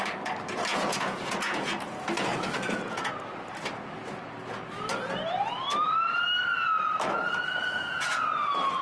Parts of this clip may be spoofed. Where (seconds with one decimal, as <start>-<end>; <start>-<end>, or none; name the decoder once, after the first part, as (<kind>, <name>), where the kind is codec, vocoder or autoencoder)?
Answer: 0.7-1.8 (vocoder, Vocos); 2.3-3.1; 7.6-8.2

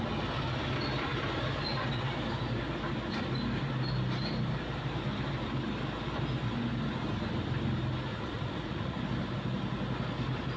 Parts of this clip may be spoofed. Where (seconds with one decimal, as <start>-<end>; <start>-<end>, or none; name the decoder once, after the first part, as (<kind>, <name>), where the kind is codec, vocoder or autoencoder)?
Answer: 8.1-9.0 (vocoder, Vocos)

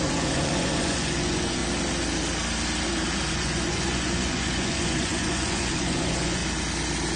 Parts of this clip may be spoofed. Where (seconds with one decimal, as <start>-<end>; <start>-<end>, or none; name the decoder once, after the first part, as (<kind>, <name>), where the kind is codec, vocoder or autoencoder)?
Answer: 0.0-1.6 (vocoder, Vocos); 3.3-6.4